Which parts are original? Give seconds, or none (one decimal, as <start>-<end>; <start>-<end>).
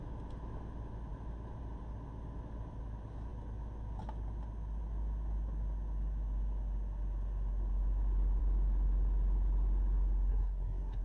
0.0-10.3